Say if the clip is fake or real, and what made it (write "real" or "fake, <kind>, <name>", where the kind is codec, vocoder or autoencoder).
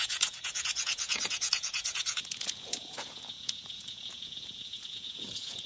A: fake, vocoder, Vocos